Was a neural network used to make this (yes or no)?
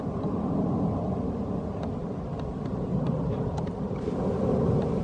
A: no